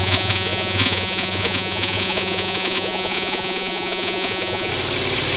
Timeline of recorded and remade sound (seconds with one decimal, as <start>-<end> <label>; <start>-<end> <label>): 0.0-4.7 remade; 4.7-5.4 recorded